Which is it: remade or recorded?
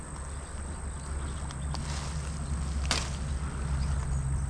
recorded